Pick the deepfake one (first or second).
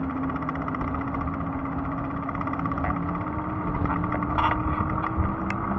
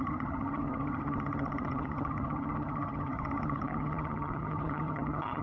second